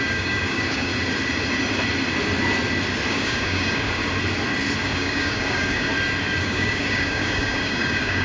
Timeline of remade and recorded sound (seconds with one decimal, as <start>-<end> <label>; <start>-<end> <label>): 0.0-0.9 remade; 0.9-3.1 recorded; 3.1-4.0 remade; 4.0-4.8 recorded; 4.8-5.9 remade; 5.9-6.4 recorded; 6.4-8.2 remade